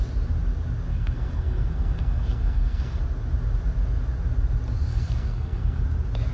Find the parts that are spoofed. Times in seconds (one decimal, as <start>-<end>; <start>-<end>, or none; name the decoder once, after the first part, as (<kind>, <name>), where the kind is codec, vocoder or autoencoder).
0.9-3.0 (codec, SNAC); 4.9-5.8